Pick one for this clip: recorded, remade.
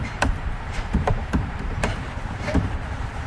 remade